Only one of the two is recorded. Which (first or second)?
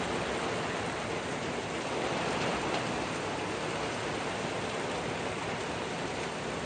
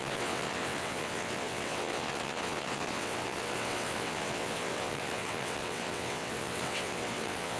first